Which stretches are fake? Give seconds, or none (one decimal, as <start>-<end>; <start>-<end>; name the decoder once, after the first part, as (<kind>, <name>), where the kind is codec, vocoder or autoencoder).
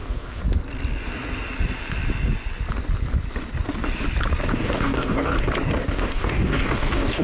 0.0-0.4 (codec, DAC); 4.5-5.3; 5.8-7.2